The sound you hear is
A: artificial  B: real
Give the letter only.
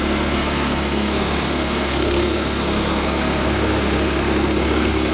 A